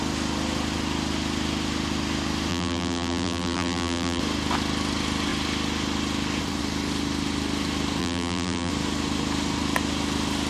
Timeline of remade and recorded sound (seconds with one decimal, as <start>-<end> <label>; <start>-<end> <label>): 0.0-2.5 recorded; 2.5-4.2 remade; 4.2-8.0 recorded; 8.0-8.7 remade; 8.7-10.5 recorded